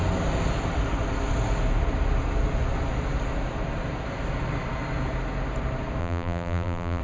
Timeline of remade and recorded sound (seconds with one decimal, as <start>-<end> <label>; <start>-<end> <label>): 0.0-6.0 recorded; 6.0-7.0 remade